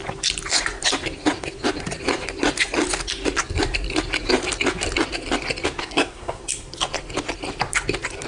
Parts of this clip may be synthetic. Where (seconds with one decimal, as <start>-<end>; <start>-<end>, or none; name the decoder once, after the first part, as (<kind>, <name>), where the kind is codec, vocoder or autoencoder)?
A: 5.8-6.4 (codec, SNAC)